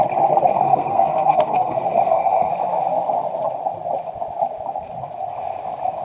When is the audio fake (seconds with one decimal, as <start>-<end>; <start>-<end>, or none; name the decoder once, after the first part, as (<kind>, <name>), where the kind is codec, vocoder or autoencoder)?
0.5-2.5 (codec, SNAC)